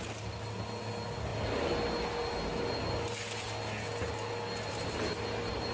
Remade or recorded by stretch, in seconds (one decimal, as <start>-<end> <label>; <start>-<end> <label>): 0.0-5.7 recorded